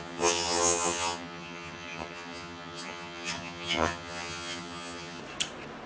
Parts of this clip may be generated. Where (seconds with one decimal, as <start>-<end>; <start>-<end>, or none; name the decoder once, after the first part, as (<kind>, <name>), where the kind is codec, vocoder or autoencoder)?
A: 0.0-5.2 (vocoder, HiFi-GAN)